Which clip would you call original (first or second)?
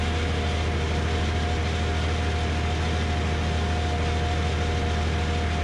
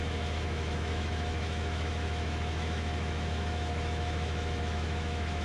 first